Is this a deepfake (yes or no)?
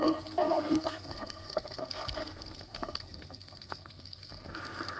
yes